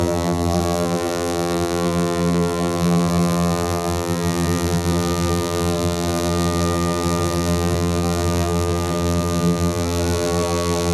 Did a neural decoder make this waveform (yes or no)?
yes